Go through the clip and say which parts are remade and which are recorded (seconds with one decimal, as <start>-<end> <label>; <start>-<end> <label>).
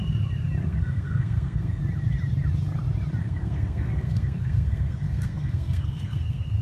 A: 0.0-0.6 recorded; 0.6-1.8 remade; 1.8-3.2 recorded; 3.2-6.6 remade